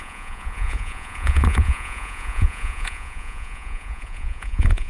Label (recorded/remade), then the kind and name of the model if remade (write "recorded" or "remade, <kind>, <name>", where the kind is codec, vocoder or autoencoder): remade, vocoder, Vocos